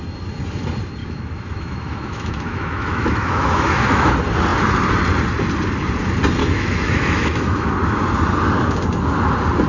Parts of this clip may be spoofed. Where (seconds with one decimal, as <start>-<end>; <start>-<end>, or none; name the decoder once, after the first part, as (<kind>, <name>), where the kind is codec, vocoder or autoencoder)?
1.0-4.1 (autoencoder, DAC-VAE); 6.4-7.7